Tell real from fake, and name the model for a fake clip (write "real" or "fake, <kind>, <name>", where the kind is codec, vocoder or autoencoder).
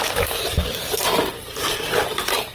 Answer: fake, vocoder, BigVGAN v2